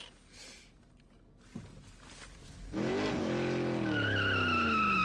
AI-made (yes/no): no